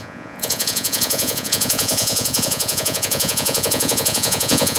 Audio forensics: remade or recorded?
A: remade